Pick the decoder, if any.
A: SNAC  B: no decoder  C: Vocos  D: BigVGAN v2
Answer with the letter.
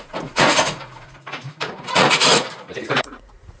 C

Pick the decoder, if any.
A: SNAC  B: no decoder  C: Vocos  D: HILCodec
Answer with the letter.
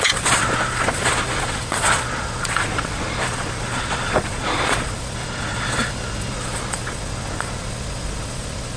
C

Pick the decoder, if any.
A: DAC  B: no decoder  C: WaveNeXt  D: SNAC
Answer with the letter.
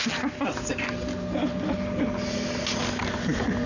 B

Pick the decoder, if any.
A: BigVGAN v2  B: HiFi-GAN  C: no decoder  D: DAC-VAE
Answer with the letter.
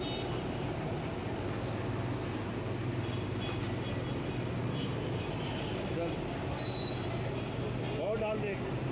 C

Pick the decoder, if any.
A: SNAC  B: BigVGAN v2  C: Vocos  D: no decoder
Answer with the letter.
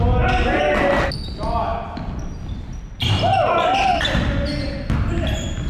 D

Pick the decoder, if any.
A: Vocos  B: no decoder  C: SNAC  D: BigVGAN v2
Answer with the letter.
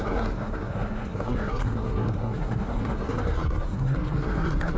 C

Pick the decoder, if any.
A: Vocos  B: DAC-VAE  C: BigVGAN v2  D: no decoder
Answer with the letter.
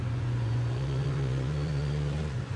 A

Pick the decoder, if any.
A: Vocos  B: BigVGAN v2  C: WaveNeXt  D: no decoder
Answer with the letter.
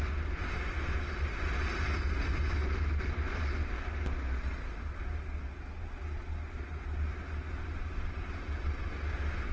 D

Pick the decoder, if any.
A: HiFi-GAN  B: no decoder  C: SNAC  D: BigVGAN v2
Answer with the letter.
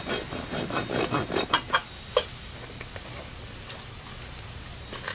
B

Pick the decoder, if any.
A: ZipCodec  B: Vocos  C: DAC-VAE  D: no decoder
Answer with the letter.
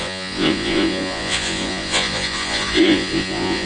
B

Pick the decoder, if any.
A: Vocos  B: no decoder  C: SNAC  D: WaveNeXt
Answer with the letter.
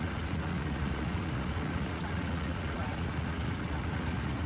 A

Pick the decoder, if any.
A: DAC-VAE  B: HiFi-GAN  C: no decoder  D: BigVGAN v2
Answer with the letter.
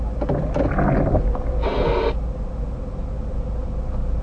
C